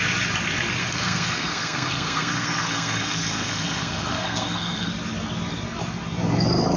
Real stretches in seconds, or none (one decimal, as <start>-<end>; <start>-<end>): 0.0-0.8; 4.9-6.8